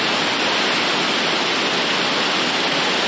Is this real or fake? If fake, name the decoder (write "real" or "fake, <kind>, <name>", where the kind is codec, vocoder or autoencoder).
real